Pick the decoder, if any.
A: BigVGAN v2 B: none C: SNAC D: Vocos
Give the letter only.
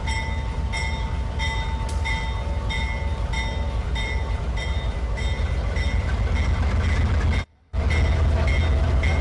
B